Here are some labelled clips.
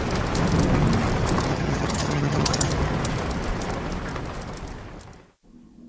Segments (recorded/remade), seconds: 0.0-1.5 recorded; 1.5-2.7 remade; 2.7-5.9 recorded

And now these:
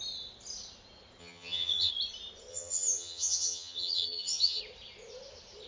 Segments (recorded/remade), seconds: 0.0-1.2 recorded; 1.2-1.9 remade; 1.9-2.5 recorded; 2.5-4.6 remade; 4.6-5.7 recorded

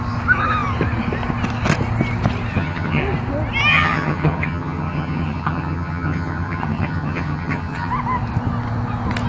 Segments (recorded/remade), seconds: 0.0-2.5 recorded; 2.5-3.0 remade; 3.0-3.7 recorded; 3.7-7.9 remade; 7.9-9.3 recorded

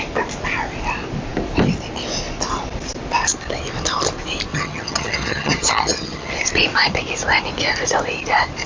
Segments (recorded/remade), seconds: 0.0-4.5 recorded; 4.5-6.3 remade; 6.3-8.7 recorded

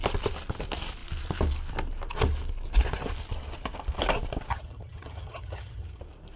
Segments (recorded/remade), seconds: 0.0-4.5 recorded; 4.5-6.0 remade; 6.0-6.4 recorded

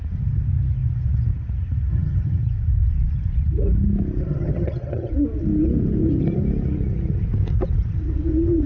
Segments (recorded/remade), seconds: 0.0-1.9 recorded; 1.9-2.4 remade; 2.4-4.3 recorded; 4.3-5.1 remade; 5.1-8.7 recorded

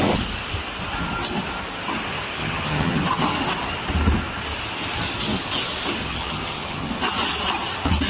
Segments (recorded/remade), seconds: 0.0-2.4 recorded; 2.4-3.0 remade; 3.0-6.0 recorded; 6.0-6.9 remade; 6.9-8.1 recorded